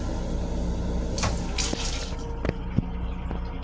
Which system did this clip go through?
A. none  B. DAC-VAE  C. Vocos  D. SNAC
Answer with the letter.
A